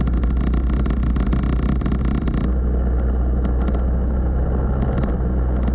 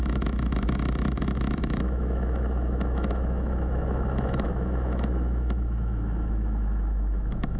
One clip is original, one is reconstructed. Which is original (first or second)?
first